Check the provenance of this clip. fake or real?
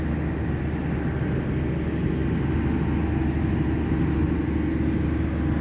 real